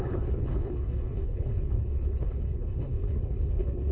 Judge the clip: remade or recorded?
remade